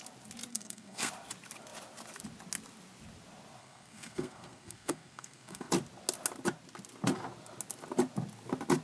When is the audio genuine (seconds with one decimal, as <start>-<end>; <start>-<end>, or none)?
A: 0.0-0.5; 1.1-3.6; 5.7-8.8